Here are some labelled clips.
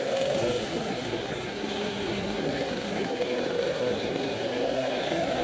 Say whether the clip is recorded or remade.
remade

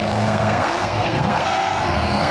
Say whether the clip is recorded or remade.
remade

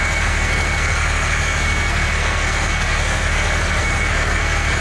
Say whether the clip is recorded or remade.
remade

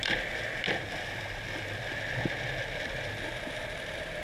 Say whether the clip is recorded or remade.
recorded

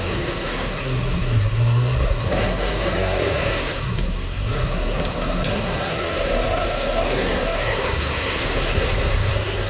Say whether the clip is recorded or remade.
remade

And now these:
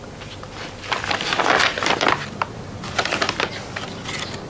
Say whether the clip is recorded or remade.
recorded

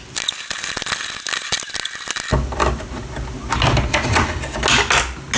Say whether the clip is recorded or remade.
recorded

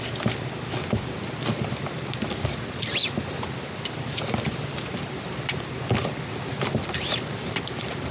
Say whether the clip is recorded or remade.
recorded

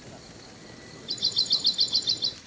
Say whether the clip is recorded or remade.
recorded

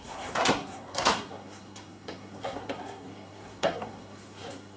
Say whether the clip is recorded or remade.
remade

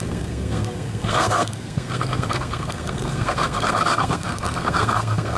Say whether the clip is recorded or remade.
remade